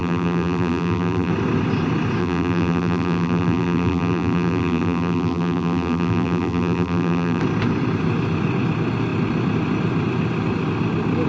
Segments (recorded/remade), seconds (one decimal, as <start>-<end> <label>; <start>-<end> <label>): 0.0-1.3 remade; 1.3-2.2 recorded; 2.2-7.4 remade; 7.4-11.3 recorded